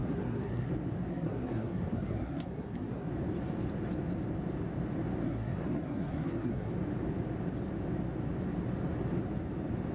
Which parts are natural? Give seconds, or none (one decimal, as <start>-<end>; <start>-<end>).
0.7-1.1; 3.1-5.2; 6.7-9.9